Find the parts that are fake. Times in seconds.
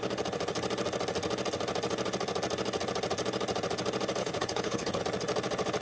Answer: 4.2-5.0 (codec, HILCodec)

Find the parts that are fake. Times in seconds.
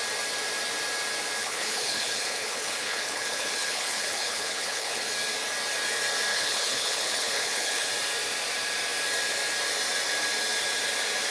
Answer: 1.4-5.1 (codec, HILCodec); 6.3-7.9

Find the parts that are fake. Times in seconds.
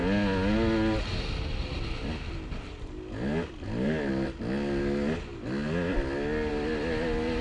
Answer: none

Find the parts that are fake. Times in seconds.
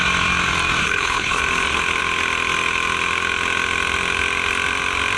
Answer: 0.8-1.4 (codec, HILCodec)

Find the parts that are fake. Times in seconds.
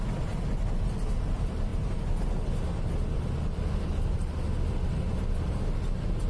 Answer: none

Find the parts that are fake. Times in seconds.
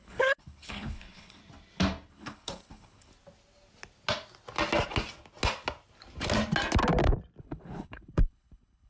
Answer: 0.0-1.4 (codec, HILCodec); 2.1-3.1; 7.4-8.9